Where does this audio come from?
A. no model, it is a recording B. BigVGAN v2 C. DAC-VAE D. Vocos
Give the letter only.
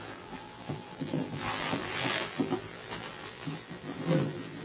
B